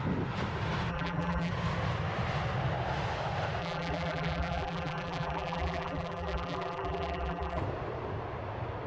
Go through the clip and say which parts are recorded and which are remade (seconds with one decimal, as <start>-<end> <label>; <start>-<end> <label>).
0.0-0.9 recorded; 0.9-1.5 remade; 1.5-3.6 recorded; 3.6-7.6 remade; 7.6-8.9 recorded